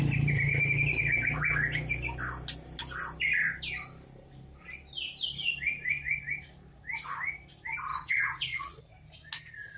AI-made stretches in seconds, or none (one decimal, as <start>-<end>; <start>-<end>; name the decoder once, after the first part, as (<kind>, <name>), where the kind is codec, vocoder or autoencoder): 7.9-8.8 (vocoder, Vocos)